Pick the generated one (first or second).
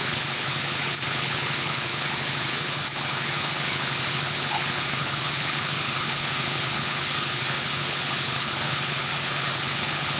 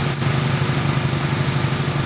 first